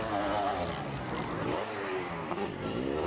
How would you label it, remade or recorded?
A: remade